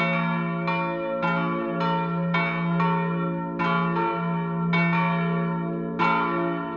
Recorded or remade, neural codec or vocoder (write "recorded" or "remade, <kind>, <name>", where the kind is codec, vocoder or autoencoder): recorded